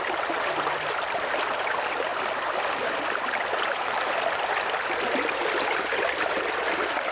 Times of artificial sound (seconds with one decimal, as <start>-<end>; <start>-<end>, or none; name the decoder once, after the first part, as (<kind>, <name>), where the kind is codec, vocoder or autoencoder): 2.1-6.4 (vocoder, BigVGAN v2)